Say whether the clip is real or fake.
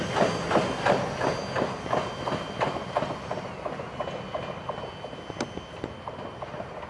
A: real